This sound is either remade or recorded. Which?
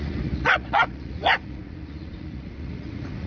remade